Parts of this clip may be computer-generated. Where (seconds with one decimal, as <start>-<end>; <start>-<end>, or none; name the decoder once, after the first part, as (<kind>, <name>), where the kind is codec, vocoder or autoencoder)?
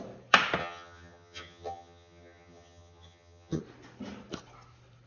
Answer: 0.6-3.6 (vocoder, HiFi-GAN)